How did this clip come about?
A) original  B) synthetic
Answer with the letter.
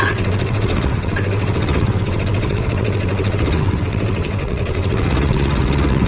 B